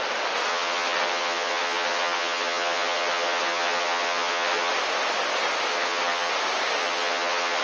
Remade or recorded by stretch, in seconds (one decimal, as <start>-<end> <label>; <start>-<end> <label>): 0.0-0.5 recorded; 0.5-4.7 remade; 4.7-5.7 recorded; 5.7-6.3 remade; 6.3-6.8 recorded; 6.8-7.6 remade